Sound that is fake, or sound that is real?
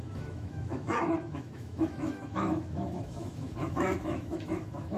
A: fake